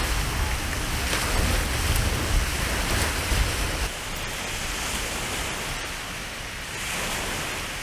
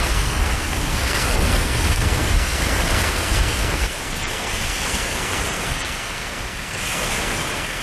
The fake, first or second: second